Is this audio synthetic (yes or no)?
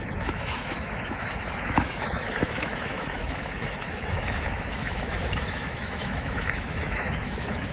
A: yes